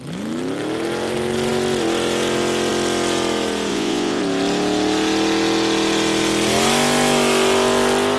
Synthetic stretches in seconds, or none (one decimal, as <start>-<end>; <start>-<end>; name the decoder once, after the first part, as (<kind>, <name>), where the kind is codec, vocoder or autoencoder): 3.7-4.2 (vocoder, Vocos)